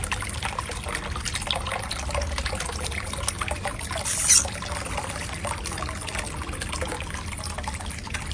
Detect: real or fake real